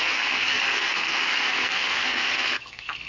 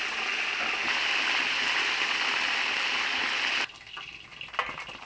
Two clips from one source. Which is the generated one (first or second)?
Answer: first